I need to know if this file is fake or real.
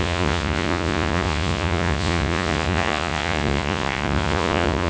fake